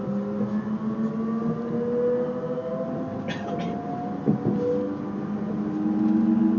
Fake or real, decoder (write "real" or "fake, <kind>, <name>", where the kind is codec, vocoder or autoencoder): real